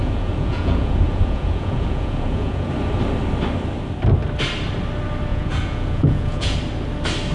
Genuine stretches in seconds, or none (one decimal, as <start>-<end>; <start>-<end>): 2.7-5.3; 6.6-7.3